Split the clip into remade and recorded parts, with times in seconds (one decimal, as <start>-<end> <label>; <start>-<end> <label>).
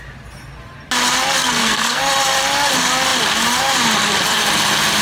0.0-1.4 recorded; 1.4-2.0 remade; 2.0-5.0 recorded